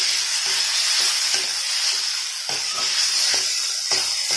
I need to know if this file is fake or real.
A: real